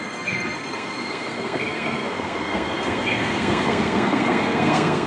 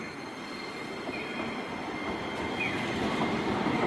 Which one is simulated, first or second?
first